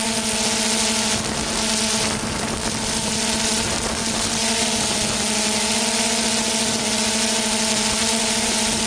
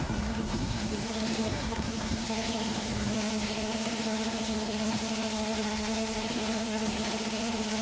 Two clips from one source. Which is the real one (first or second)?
first